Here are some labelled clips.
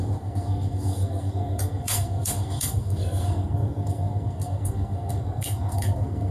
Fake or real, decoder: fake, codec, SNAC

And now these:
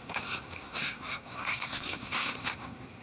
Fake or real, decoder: fake, codec, SNAC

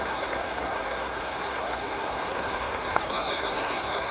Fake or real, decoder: fake, codec, SNAC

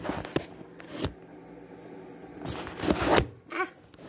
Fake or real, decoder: real